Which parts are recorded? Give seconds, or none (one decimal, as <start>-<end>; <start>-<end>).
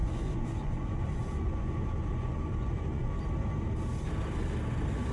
3.1-5.1